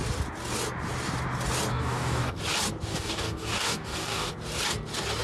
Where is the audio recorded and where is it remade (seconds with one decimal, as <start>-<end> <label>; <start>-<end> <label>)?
0.0-1.7 recorded; 1.7-2.4 remade; 2.4-2.9 recorded; 2.9-4.3 remade; 4.3-5.2 recorded